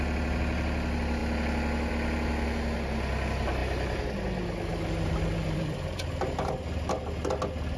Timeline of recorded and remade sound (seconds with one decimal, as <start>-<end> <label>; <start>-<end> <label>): 0.0-4.7 recorded; 4.7-6.0 remade; 6.0-7.8 recorded